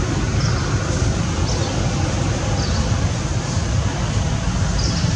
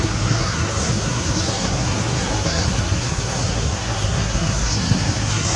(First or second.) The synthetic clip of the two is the second